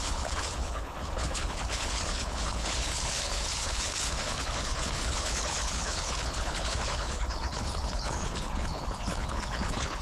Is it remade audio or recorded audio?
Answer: remade